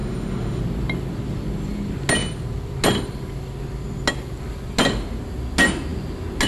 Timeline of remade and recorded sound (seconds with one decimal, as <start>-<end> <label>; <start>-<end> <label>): 0.0-0.6 remade; 0.6-6.5 recorded